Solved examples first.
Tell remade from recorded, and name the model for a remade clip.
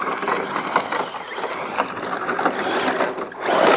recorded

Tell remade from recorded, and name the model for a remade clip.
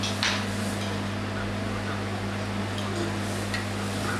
recorded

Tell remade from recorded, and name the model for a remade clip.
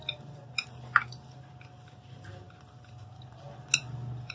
recorded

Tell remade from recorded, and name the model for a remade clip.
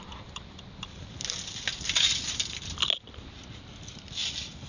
recorded